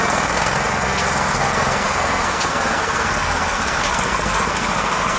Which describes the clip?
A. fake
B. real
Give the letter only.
A